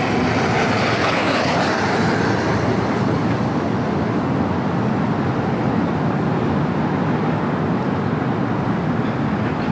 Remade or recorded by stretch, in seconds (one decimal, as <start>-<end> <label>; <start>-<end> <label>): 0.0-1.0 recorded; 1.0-1.6 remade; 1.6-9.7 recorded